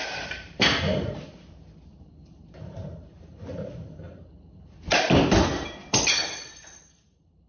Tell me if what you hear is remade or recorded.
remade